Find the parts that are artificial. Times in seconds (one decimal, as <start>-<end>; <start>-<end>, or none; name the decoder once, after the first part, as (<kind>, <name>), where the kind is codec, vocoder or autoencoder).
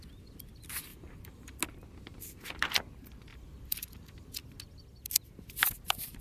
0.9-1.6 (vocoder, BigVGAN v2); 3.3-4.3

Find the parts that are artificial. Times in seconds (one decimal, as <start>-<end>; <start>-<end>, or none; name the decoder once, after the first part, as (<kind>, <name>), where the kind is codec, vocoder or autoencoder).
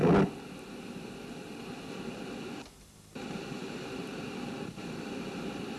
none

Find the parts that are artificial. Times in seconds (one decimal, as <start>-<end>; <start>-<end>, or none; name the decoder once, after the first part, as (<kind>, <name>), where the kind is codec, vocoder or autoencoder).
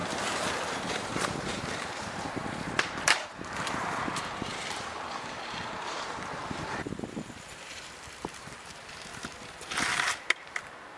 0.0-9.1 (vocoder, BigVGAN v2); 9.9-11.0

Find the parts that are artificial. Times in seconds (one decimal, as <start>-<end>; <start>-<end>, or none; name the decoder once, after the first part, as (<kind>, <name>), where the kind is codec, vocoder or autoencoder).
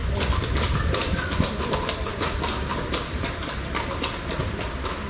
2.1-5.1 (vocoder, BigVGAN v2)